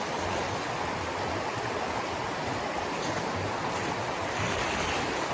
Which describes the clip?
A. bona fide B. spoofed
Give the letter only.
A